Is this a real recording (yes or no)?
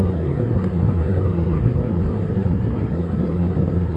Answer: no